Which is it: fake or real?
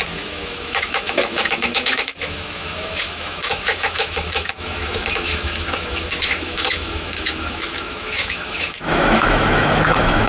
fake